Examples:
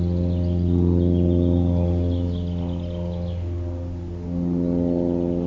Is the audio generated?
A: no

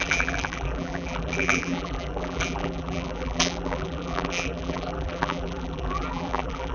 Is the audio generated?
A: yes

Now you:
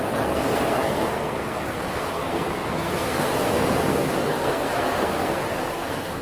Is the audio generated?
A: yes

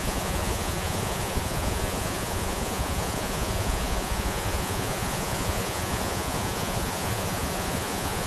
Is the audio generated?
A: yes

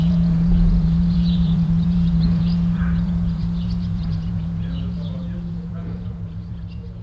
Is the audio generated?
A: yes